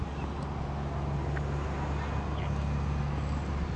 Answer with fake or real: real